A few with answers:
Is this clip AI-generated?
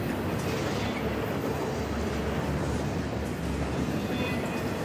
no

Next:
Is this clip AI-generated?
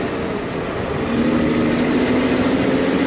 no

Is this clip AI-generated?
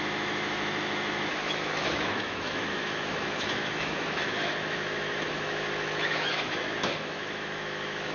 yes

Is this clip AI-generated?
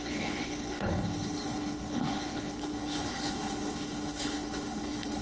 yes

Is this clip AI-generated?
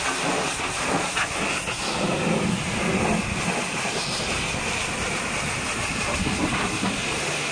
no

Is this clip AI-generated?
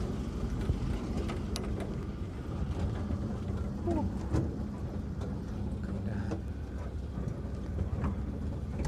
no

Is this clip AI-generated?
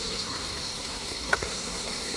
yes